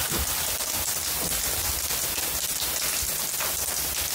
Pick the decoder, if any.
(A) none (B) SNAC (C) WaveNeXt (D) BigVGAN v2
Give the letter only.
A